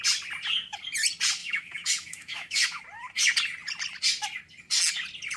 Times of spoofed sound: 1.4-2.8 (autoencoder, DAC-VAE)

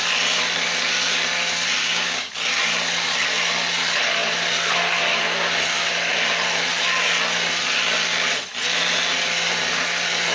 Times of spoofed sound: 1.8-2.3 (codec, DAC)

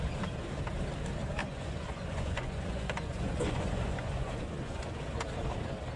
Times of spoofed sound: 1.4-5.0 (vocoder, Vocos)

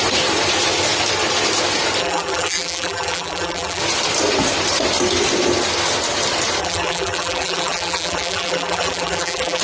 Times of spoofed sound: 2.0-3.8 (vocoder, BigVGAN v2); 6.6-9.6

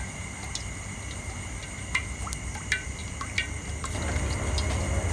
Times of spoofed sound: none

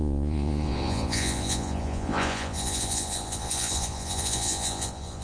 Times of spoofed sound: 0.0-5.2 (vocoder, Vocos)

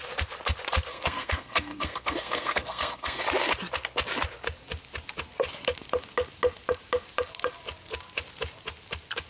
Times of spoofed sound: 0.9-3.2 (codec, SNAC)